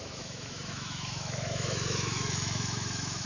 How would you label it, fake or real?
fake